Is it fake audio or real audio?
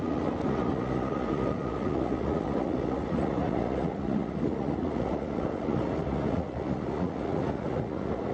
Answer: fake